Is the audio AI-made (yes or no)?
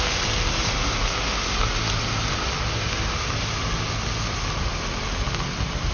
no